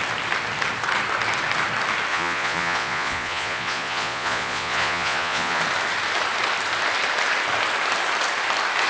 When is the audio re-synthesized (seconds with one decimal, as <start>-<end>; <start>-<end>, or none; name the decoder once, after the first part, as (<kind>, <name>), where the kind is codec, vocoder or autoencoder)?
2.1-5.6 (vocoder, Vocos)